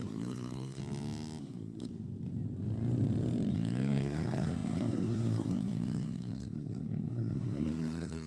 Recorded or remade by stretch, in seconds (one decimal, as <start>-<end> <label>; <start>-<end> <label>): 0.0-0.8 remade; 0.8-1.4 recorded; 1.4-1.9 remade; 1.9-3.5 recorded; 3.5-8.3 remade